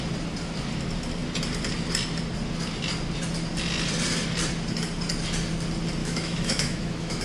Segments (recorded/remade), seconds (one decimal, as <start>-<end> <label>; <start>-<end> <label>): 0.0-6.0 recorded; 6.0-7.2 remade